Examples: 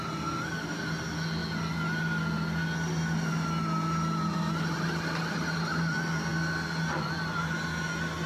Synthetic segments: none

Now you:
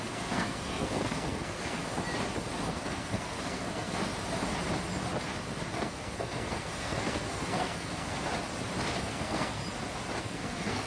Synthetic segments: 0.0-1.8 (codec, SNAC); 2.7-4.0; 5.7-8.3; 9.0-9.6; 10.2-10.9

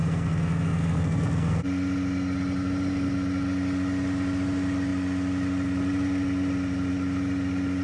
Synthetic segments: 0.0-1.6 (codec, SNAC)

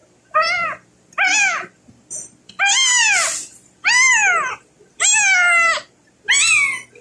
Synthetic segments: none

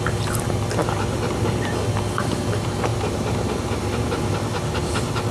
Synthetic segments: none

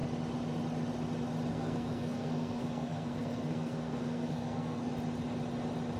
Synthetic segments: 1.5-4.9 (codec, SNAC)

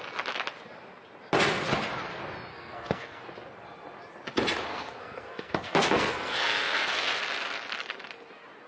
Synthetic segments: 2.5-3.2 (codec, SNAC); 4.7-7.2